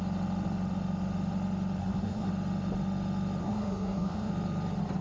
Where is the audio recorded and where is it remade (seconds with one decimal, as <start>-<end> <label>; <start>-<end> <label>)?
0.0-1.8 recorded; 1.8-2.3 remade; 2.3-3.4 recorded; 3.4-4.3 remade; 4.3-5.0 recorded